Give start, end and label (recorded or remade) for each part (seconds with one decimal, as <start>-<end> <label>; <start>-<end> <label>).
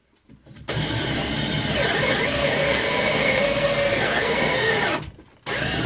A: 0.0-2.4 recorded; 2.4-4.7 remade; 4.7-5.9 recorded